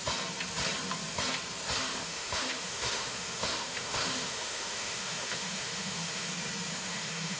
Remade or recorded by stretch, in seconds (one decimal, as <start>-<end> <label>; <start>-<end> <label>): 0.0-1.9 recorded; 1.9-6.3 remade; 6.3-6.7 recorded; 6.7-7.4 remade